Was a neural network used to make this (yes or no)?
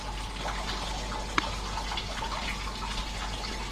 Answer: no